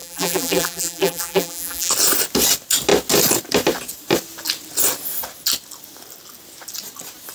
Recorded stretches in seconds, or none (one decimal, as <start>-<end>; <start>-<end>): 1.9-7.3